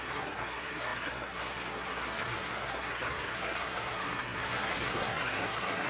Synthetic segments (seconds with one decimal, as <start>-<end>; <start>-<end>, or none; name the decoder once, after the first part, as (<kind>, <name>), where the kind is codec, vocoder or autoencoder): 0.0-5.9 (codec, SNAC)